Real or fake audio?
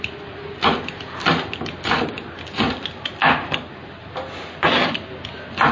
real